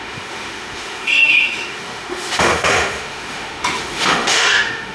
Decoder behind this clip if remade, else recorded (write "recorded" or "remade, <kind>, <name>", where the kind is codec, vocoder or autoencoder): remade, autoencoder, DAC-VAE